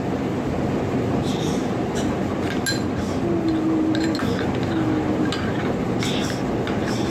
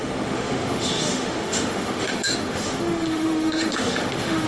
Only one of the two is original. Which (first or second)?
first